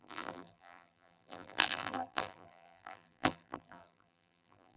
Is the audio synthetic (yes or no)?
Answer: yes